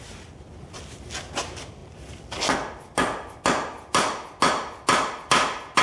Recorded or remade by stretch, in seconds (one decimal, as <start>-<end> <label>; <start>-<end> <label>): 0.0-5.8 recorded